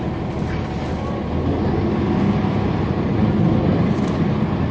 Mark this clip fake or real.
real